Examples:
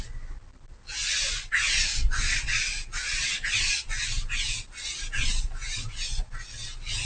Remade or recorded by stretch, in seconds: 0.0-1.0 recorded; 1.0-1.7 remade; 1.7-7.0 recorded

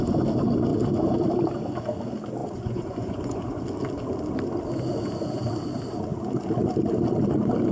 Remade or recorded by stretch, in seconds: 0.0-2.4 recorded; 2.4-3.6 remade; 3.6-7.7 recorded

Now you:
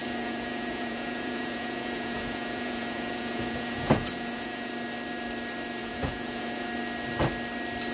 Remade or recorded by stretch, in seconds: 0.0-4.7 remade; 4.7-5.8 recorded; 5.8-6.7 remade; 6.7-7.9 recorded